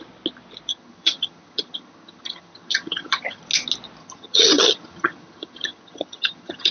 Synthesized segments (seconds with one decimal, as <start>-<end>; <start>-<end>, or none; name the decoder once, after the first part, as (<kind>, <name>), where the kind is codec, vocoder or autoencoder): 0.7-3.4 (vocoder, HiFi-GAN); 4.0-6.7